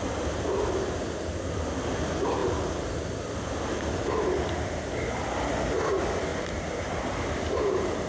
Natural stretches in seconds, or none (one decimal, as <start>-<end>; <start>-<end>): 0.0-6.3